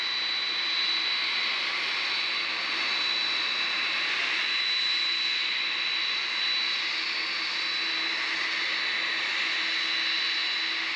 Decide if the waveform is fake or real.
real